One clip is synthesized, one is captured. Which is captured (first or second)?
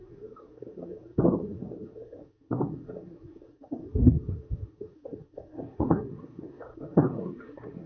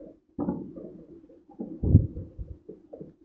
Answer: second